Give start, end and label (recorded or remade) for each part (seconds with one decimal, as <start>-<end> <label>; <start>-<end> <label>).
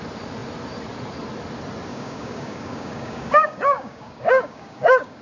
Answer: 0.0-1.9 recorded; 1.9-5.2 remade